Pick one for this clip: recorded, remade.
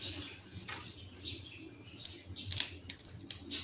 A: recorded